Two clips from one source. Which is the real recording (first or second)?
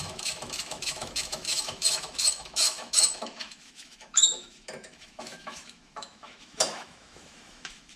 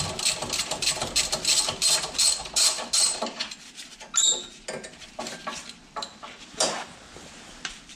second